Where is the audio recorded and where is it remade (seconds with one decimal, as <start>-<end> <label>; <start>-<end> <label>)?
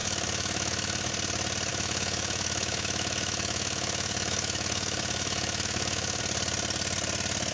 0.0-1.1 remade; 1.1-1.7 recorded; 1.7-6.2 remade; 6.2-7.5 recorded